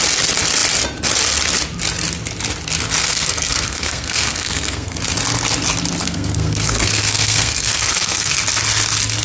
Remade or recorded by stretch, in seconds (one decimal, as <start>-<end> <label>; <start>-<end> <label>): 0.0-3.0 recorded; 3.0-5.0 remade; 5.0-6.0 recorded; 6.0-8.3 remade; 8.3-9.2 recorded